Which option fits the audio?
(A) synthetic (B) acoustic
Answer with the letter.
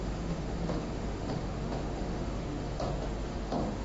A